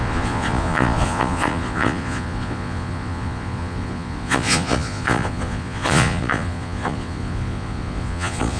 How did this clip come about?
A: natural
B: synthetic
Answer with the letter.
B